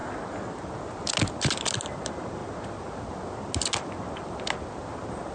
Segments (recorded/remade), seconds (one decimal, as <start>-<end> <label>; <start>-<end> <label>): 0.0-5.3 recorded